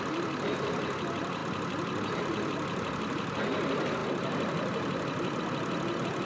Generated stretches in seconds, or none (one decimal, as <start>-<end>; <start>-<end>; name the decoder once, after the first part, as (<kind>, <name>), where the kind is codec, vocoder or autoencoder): none